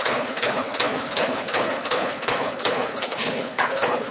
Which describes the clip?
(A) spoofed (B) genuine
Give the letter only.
A